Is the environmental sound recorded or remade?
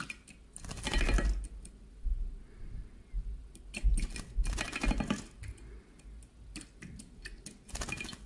recorded